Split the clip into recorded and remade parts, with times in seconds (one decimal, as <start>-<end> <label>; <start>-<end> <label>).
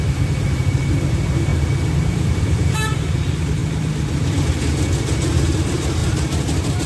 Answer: 0.0-1.5 remade; 1.5-2.1 recorded; 2.1-3.6 remade; 3.6-5.0 recorded; 5.0-6.9 remade